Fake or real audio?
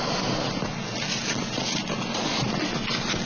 real